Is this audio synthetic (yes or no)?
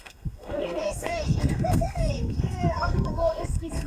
yes